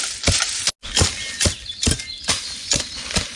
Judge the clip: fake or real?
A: real